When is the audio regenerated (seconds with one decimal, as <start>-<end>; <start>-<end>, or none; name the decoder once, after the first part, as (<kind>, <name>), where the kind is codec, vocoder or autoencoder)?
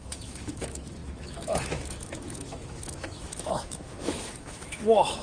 0.0-5.2 (autoencoder, DAC-VAE)